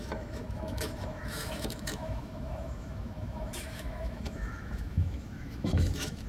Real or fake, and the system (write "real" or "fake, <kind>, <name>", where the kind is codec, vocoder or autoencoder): fake, autoencoder, DAC-VAE